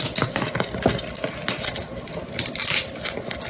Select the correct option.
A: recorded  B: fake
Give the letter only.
A